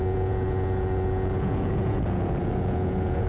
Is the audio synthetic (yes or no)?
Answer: yes